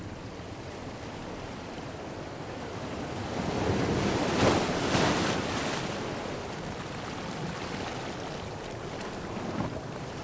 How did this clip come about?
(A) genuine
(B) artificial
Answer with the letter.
A